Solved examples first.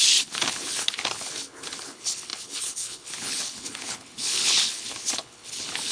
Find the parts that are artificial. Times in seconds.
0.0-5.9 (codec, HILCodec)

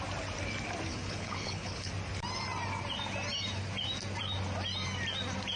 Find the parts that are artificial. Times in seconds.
0.9-1.9 (codec, HILCodec)

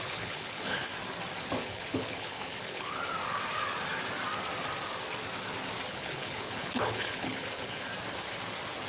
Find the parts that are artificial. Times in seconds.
0.0-0.9 (codec, HILCodec); 1.6-3.0; 5.9-7.9